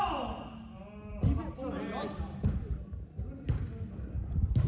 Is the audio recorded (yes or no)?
yes